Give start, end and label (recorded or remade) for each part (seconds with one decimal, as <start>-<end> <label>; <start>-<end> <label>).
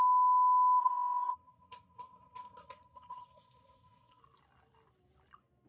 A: 0.0-0.8 recorded; 0.8-4.2 remade; 4.2-5.7 recorded